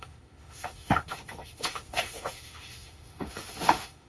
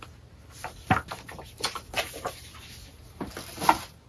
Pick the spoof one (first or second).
first